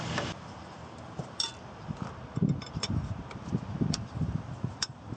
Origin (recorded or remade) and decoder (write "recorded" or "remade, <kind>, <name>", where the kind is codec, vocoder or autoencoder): remade, vocoder, BigVGAN v2